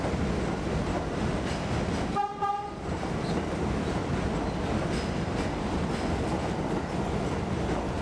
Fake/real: real